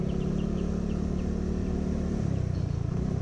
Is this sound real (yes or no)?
yes